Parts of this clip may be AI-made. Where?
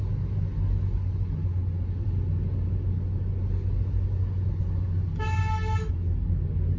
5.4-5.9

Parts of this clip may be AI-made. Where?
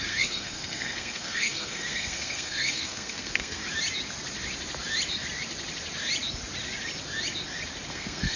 0.0-3.6; 7.9-8.4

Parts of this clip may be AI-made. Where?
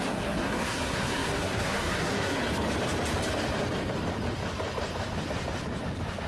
0.0-2.4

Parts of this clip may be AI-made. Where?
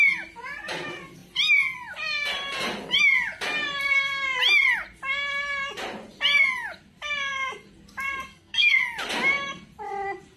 8.3-8.8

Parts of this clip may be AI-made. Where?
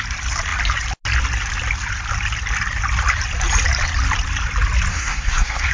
4.9-5.7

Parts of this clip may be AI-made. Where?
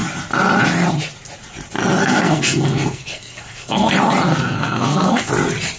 2.0-3.9; 4.3-5.3